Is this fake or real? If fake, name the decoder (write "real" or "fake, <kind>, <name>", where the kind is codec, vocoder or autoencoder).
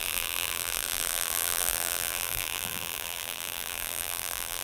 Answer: fake, vocoder, BigVGAN v2